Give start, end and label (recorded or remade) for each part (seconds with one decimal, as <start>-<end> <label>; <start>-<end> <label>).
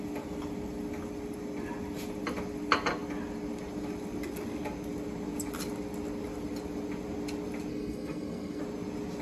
0.0-7.7 recorded; 7.7-8.6 remade; 8.6-9.2 recorded